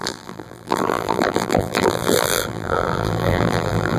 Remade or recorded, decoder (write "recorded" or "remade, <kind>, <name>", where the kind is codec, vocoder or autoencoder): remade, vocoder, BigVGAN v2